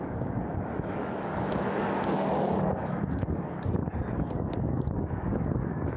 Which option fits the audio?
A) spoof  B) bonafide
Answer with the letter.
A